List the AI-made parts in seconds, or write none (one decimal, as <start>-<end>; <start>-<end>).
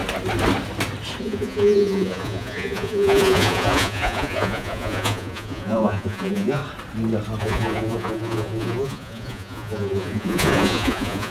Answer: 1.2-6.6; 7.4-11.3